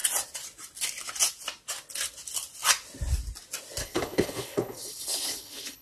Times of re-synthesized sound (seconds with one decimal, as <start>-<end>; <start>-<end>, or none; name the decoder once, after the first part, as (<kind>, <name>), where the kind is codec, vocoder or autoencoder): 3.8-5.8 (codec, HILCodec)

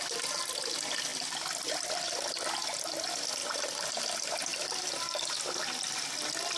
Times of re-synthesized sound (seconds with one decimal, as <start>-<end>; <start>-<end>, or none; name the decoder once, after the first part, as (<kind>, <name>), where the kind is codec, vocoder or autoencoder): 1.1-2.5 (vocoder, BigVGAN v2)

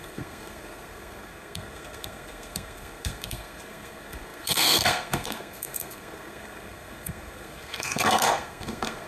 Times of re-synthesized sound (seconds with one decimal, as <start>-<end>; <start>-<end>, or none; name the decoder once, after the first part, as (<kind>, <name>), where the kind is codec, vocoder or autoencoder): 0.0-9.1 (codec, SNAC)

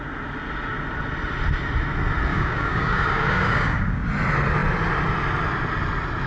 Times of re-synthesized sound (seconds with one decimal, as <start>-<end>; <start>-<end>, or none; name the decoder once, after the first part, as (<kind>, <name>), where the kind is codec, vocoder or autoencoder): 2.3-4.0 (codec, DAC)

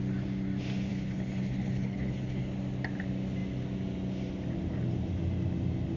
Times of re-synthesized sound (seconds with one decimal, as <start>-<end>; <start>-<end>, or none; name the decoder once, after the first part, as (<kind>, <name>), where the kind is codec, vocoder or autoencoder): 0.9-2.4 (codec, HILCodec)

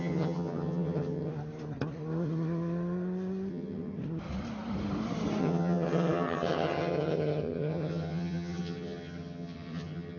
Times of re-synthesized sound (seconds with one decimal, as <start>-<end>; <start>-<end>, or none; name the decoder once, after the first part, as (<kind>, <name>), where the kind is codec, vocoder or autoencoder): 0.0-1.3 (vocoder, HiFi-GAN); 3.5-4.0; 5.4-10.2

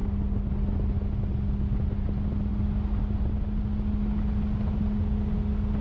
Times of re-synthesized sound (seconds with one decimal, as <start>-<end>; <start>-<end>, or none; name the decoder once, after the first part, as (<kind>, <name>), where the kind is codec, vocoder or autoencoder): none